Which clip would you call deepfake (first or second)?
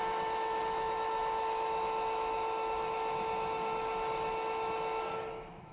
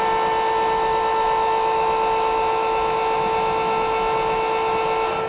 first